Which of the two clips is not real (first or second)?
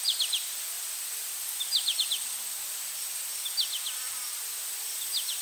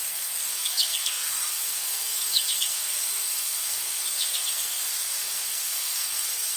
second